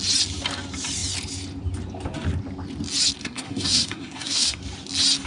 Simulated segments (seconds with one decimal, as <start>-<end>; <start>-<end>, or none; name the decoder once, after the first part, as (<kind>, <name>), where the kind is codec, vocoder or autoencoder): 3.2-4.6 (codec, SNAC)